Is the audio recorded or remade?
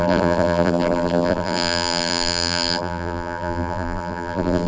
remade